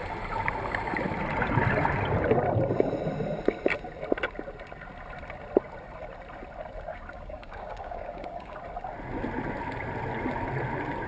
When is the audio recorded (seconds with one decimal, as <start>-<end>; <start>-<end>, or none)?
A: 0.0-6.9; 8.6-11.1